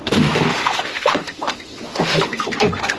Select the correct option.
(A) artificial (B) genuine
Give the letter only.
A